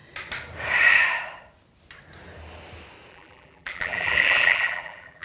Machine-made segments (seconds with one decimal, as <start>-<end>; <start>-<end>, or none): 3.1-5.2